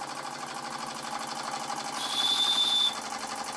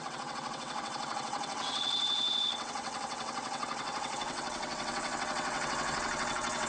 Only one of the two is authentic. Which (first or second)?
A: first